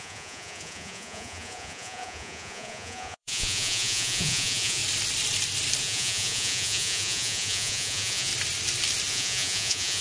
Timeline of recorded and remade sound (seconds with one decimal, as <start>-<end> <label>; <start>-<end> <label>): 0.0-4.8 remade; 4.8-5.8 recorded; 5.8-8.3 remade; 8.3-9.1 recorded; 9.1-10.0 remade